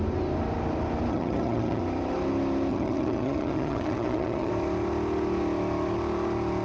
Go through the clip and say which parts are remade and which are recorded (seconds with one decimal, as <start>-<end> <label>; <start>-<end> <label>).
0.0-1.1 recorded; 1.1-1.8 remade; 1.8-2.7 recorded; 2.7-4.5 remade; 4.5-6.6 recorded